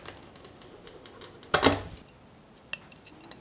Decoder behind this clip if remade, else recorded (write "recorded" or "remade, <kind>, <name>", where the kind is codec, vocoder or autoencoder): recorded